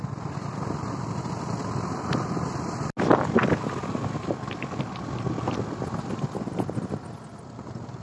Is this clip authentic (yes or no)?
yes